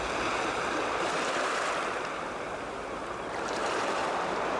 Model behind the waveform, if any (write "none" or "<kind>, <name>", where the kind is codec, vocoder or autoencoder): none